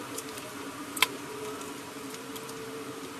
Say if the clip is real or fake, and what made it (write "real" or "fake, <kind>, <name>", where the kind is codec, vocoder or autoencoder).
fake, vocoder, BigVGAN v2